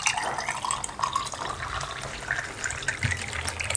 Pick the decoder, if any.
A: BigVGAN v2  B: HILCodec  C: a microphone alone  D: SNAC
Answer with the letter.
C